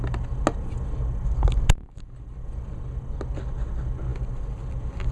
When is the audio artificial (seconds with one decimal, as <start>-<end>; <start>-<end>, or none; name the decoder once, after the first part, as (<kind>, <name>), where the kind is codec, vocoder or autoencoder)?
none